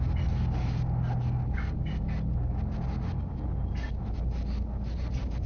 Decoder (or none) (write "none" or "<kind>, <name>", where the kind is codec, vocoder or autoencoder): none